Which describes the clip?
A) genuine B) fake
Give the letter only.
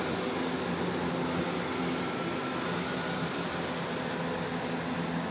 A